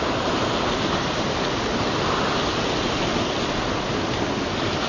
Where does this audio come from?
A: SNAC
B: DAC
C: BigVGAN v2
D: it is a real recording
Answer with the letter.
D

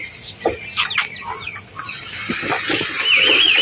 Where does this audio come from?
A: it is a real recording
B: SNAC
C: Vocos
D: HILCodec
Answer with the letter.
A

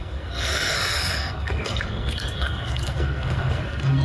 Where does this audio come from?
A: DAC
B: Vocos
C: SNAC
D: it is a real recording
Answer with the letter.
C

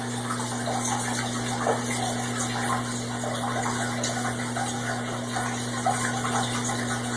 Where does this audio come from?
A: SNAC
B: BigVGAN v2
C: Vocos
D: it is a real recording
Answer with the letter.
D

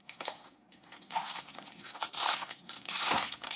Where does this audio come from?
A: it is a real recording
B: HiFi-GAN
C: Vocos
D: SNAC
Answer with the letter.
D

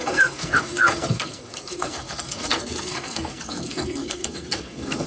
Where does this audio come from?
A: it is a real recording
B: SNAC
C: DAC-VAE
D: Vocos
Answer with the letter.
B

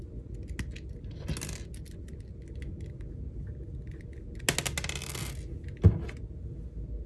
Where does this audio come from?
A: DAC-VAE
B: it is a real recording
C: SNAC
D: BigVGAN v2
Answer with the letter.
B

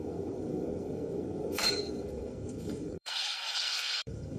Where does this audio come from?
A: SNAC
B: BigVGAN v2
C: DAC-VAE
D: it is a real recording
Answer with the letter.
A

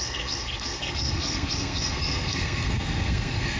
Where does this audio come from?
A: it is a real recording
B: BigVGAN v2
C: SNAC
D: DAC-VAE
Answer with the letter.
C